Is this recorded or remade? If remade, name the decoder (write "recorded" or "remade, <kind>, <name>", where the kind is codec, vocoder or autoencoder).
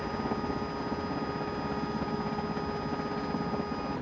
recorded